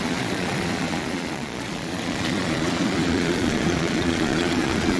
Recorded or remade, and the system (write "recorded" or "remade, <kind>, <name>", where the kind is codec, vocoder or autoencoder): remade, vocoder, Vocos